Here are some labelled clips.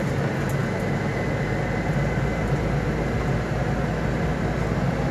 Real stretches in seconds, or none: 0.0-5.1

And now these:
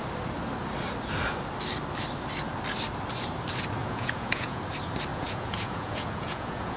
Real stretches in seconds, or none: 0.0-3.8; 4.6-5.1